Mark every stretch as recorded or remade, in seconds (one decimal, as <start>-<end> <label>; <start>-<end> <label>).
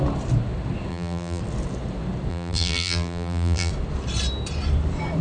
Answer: 0.0-0.9 recorded; 0.9-1.4 remade; 1.4-2.3 recorded; 2.3-3.7 remade; 3.7-5.2 recorded